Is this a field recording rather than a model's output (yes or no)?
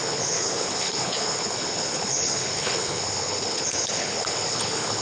no